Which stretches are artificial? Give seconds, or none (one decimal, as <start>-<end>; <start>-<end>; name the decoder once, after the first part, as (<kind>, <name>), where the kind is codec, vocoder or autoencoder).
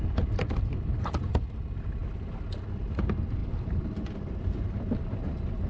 none